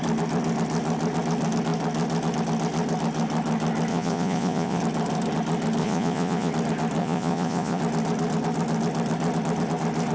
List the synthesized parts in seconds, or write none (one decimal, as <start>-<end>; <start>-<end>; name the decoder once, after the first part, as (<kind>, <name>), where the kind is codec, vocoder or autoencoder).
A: 3.9-4.8 (vocoder, Vocos); 5.8-6.5; 7.0-7.8